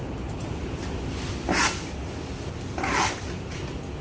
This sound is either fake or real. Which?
real